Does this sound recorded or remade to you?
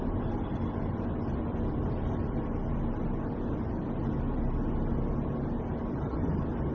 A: recorded